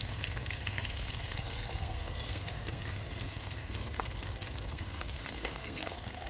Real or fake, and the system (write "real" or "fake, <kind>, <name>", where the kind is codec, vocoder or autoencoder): fake, codec, SNAC